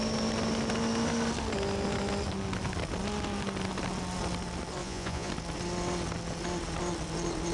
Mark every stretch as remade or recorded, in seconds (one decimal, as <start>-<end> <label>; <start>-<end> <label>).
0.0-4.8 recorded; 4.8-5.3 remade; 5.3-7.5 recorded